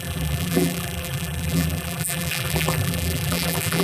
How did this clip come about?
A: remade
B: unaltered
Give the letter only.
A